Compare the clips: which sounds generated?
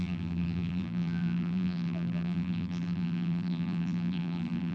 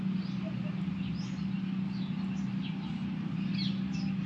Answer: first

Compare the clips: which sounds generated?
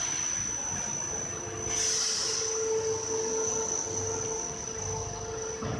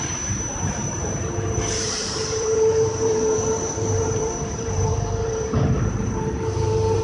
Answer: second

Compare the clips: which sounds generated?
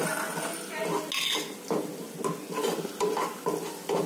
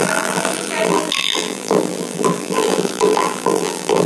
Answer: second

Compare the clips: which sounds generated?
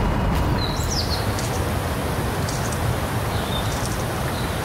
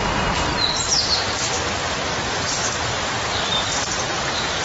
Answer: second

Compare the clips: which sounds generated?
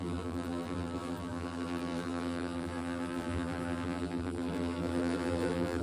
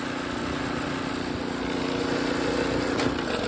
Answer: first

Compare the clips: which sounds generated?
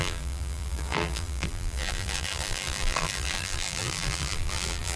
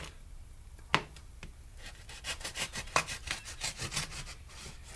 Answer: first